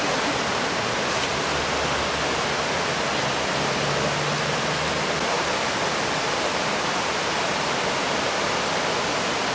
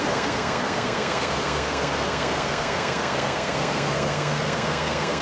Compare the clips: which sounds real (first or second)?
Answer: first